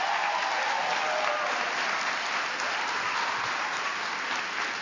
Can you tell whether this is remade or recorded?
recorded